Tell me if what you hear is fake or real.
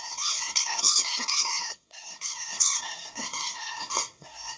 fake